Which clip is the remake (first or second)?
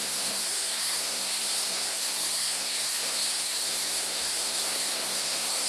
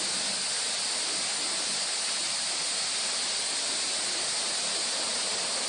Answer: first